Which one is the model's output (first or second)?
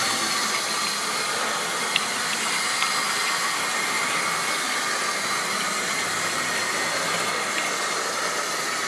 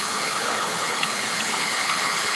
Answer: second